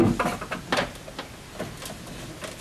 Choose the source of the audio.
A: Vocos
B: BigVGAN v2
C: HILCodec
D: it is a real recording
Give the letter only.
D